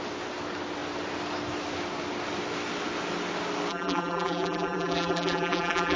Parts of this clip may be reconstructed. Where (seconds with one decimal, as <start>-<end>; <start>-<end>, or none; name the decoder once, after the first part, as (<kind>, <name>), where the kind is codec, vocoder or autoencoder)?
3.7-6.0 (vocoder, BigVGAN v2)